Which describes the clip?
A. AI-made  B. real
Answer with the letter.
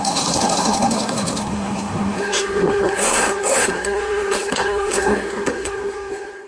A